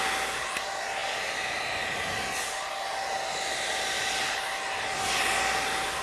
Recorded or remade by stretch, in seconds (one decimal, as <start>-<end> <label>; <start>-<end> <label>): 0.0-6.0 recorded